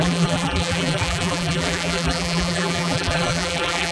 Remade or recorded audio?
remade